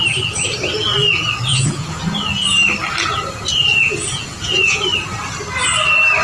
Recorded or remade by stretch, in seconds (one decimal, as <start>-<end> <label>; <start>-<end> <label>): 0.0-1.5 recorded; 1.5-2.0 remade; 2.0-3.7 recorded; 3.7-4.8 remade; 4.8-6.2 recorded